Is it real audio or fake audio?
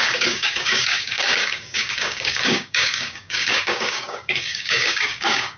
fake